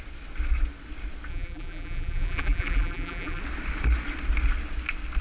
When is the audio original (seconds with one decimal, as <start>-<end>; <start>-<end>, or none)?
0.0-1.3; 3.4-5.2